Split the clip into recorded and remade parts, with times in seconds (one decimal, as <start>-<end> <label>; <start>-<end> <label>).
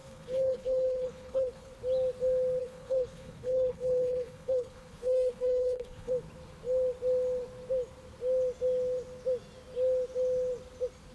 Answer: 0.0-1.7 remade; 1.7-2.6 recorded; 2.6-6.1 remade; 6.1-11.1 recorded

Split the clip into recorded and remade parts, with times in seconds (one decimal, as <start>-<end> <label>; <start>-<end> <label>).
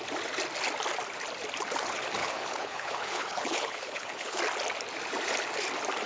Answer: 0.0-2.2 recorded; 2.2-4.4 remade; 4.4-6.1 recorded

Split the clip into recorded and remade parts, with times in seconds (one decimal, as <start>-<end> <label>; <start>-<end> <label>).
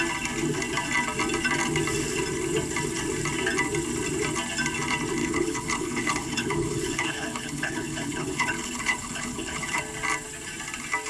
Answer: 0.0-5.2 recorded; 5.2-9.8 remade; 9.8-11.1 recorded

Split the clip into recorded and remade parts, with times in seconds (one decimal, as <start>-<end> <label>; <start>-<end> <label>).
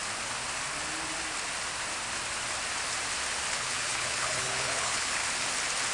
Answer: 0.0-3.5 recorded; 3.5-5.2 remade; 5.2-5.9 recorded